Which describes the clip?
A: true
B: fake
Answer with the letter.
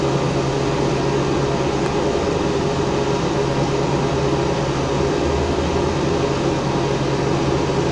A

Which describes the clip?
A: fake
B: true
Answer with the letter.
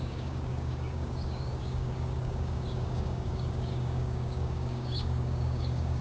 A